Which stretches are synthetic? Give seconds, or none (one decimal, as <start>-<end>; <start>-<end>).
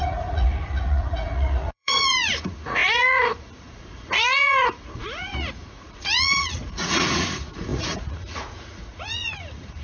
0.0-9.8